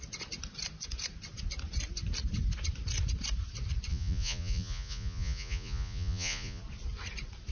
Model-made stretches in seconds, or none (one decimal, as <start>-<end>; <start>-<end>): 3.9-6.6